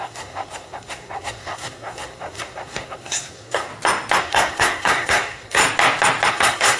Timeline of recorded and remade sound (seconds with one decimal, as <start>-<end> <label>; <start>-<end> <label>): 0.0-3.7 remade; 3.7-4.2 recorded; 4.2-5.6 remade; 5.6-6.3 recorded; 6.3-6.8 remade

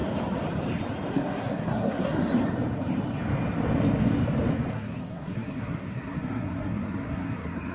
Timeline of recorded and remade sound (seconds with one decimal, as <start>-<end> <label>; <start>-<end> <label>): 0.0-1.1 recorded; 1.1-2.3 remade; 2.3-4.7 recorded; 4.7-7.7 remade

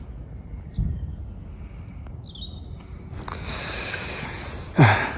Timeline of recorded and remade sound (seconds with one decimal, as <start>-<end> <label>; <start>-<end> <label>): 0.0-5.2 recorded

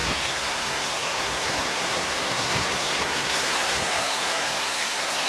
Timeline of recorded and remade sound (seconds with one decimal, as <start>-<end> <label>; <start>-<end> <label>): 0.0-5.3 remade